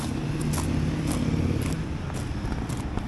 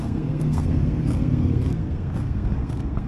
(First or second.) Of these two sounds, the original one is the first